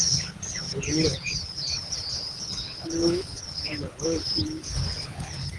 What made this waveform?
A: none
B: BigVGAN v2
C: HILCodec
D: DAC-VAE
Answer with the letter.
C